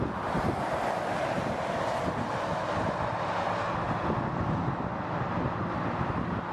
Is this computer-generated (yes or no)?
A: no